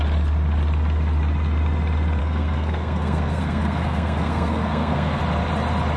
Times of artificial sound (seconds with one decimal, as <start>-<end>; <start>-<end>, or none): 2.2-5.2